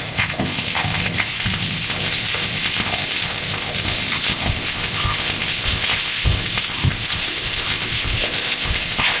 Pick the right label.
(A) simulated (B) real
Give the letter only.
A